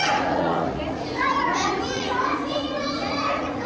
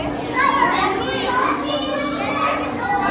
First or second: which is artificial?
first